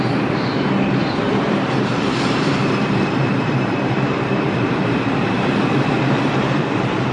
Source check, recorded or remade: remade